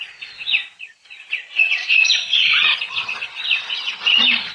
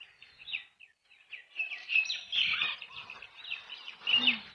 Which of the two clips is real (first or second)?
second